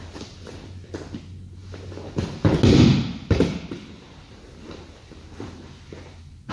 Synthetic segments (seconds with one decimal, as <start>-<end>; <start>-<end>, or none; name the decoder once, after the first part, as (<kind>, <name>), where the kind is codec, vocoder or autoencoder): none